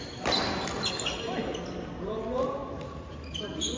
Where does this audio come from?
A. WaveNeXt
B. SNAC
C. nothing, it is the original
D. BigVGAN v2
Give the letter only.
C